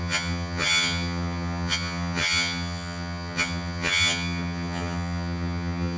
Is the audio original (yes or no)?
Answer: no